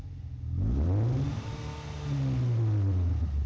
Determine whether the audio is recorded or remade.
recorded